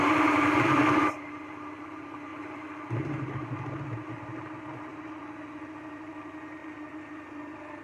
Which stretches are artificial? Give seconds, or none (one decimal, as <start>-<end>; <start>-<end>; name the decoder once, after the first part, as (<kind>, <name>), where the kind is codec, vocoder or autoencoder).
0.0-7.8 (vocoder, BigVGAN v2)